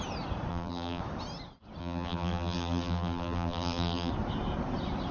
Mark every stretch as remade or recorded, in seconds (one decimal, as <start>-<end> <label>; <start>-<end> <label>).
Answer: 0.0-0.5 recorded; 0.5-1.0 remade; 1.0-1.8 recorded; 1.8-4.1 remade; 4.1-5.1 recorded